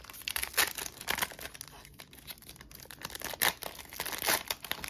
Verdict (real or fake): real